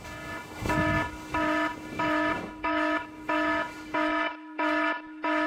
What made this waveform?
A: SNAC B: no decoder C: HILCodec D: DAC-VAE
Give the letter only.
D